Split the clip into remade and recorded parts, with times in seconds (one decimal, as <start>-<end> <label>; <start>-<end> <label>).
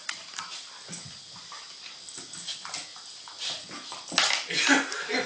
0.0-5.3 recorded